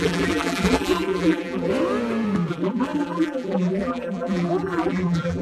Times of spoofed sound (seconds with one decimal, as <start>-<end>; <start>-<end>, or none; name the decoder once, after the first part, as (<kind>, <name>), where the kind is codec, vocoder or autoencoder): 0.0-1.7 (vocoder, BigVGAN v2); 2.5-5.4